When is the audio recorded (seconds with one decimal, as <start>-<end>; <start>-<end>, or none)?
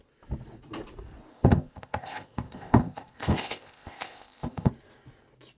0.0-1.3; 4.7-5.6